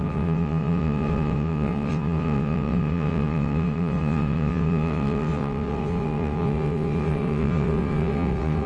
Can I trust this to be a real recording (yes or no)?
no